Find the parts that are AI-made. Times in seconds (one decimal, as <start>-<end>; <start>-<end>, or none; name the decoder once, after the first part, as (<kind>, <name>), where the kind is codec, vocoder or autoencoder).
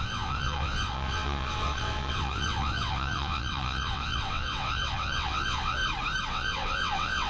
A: 0.0-5.8 (vocoder, WaveNeXt); 6.3-7.3